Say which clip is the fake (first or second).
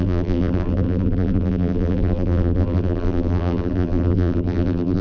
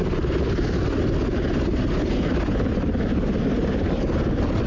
first